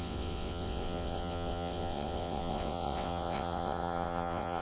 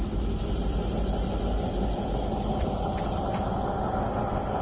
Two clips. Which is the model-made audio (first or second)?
first